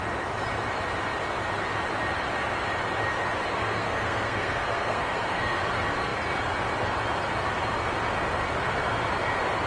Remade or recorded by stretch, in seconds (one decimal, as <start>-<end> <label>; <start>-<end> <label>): 0.0-3.5 recorded; 3.5-5.6 remade; 5.6-9.7 recorded

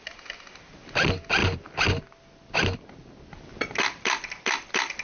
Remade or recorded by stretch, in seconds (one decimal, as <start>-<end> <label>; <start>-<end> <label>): 0.0-5.0 recorded

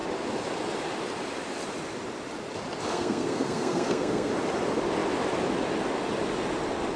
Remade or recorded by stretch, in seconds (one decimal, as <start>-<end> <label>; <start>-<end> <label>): 0.0-2.9 recorded; 2.9-4.3 remade; 4.3-7.0 recorded

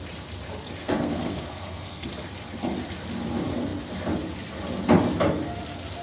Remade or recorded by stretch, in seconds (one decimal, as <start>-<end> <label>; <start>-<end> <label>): 0.0-0.8 recorded; 0.8-2.1 remade; 2.1-6.0 recorded

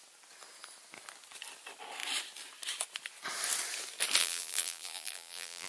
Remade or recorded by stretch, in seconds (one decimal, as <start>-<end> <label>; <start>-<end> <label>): 0.0-4.2 recorded; 4.2-5.7 remade

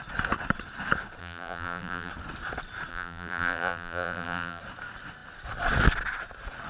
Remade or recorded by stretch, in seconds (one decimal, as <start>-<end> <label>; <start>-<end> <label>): 0.0-1.2 recorded; 1.2-2.1 remade; 2.1-2.9 recorded; 2.9-4.6 remade; 4.6-6.7 recorded

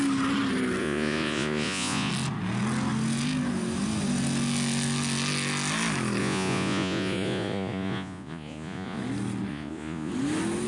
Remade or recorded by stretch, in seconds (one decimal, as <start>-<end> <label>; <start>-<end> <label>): 0.0-0.8 recorded; 0.8-2.1 remade; 2.1-6.2 recorded; 6.2-9.0 remade; 9.0-9.5 recorded; 9.5-10.1 remade; 10.1-10.7 recorded

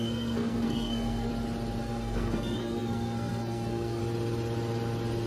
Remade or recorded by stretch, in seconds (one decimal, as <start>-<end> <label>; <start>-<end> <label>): 0.0-1.3 remade; 1.3-1.8 recorded; 1.8-4.0 remade; 4.0-5.3 recorded